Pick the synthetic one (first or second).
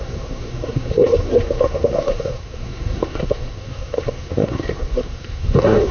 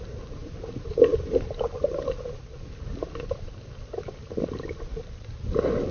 first